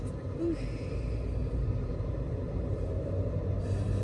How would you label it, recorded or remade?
recorded